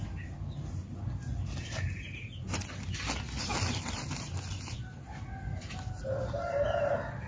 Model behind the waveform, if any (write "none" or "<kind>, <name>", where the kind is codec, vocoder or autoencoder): none